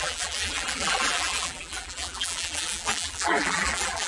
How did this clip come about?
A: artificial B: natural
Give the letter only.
A